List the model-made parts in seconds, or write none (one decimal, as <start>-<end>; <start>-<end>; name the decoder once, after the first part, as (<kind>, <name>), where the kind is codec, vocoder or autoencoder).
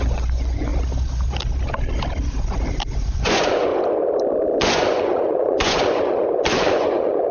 0.0-0.7 (vocoder, Vocos); 3.1-3.7; 4.6-7.3